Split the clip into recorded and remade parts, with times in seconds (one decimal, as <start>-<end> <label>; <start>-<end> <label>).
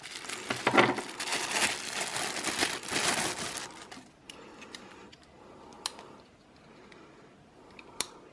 0.0-8.3 recorded